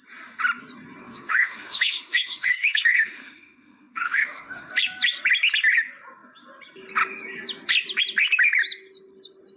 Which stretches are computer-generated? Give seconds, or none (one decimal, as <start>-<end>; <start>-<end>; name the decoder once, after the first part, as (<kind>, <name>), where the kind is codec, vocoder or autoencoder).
1.0-4.7 (autoencoder, DAC-VAE)